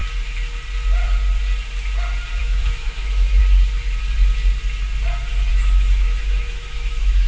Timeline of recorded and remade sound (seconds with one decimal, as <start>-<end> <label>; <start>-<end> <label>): 0.0-2.4 recorded; 2.4-3.4 remade; 3.4-5.5 recorded; 5.5-7.3 remade